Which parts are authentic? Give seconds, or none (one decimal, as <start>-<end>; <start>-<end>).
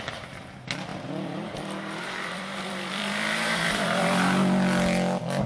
0.0-0.9; 4.0-5.5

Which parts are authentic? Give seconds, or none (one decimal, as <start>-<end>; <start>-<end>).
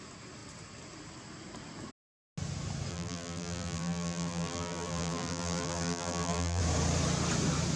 0.0-2.9; 6.6-7.8